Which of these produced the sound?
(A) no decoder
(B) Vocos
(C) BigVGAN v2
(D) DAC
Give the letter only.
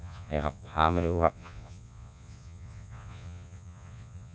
B